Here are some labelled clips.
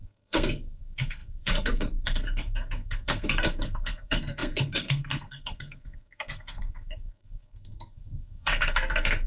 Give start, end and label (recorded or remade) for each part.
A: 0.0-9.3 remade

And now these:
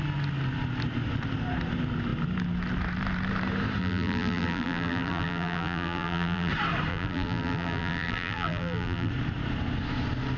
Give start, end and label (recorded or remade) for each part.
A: 0.0-3.8 recorded; 3.8-6.5 remade; 6.5-6.9 recorded; 6.9-9.1 remade; 9.1-10.4 recorded

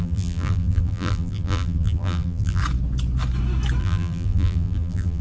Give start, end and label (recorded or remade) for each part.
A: 0.0-2.6 remade; 2.6-3.8 recorded; 3.8-5.2 remade